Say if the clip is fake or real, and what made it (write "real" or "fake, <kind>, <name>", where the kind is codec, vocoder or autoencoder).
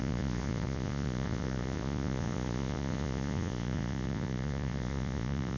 fake, vocoder, Vocos